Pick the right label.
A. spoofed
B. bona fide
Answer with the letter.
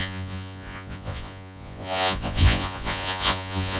A